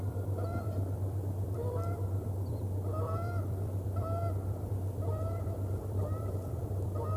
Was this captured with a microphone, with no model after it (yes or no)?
no